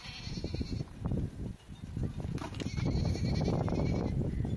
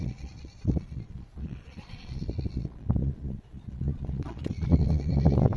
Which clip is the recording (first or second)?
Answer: first